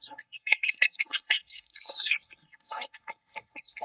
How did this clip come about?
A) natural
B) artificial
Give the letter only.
B